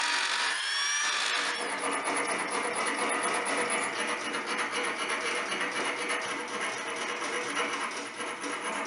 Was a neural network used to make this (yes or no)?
no